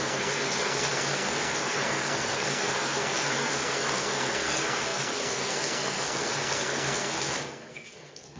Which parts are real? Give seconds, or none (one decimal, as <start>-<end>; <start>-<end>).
none